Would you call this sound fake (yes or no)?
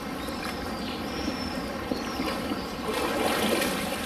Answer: no